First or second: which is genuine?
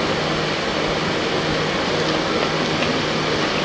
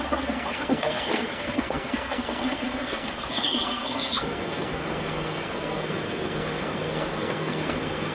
first